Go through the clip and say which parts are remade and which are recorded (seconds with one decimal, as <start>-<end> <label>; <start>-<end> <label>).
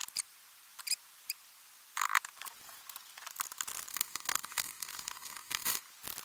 0.0-3.9 recorded; 3.9-5.8 remade; 5.8-6.2 recorded